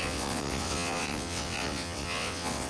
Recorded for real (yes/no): no